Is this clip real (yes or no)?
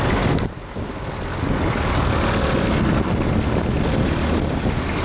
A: yes